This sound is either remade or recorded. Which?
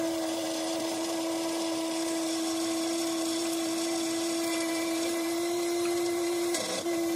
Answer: remade